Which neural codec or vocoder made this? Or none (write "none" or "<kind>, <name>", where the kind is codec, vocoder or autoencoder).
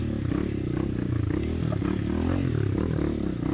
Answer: none